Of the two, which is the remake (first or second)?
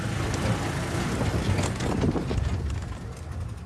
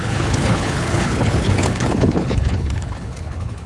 second